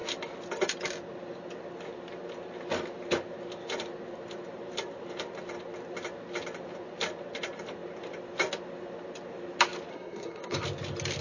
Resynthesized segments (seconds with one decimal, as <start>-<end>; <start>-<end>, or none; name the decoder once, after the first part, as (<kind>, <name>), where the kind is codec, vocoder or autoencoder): 9.9-10.6 (codec, SNAC)